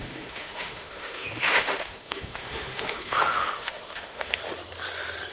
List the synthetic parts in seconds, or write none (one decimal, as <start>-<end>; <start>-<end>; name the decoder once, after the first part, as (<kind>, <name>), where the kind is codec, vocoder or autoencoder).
0.0-4.4 (autoencoder, DAC-VAE)